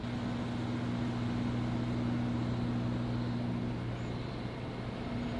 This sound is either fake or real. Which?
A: real